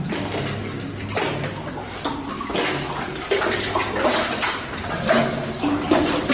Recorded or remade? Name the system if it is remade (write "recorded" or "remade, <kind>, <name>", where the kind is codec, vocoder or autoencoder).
recorded